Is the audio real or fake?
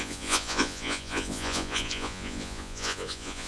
fake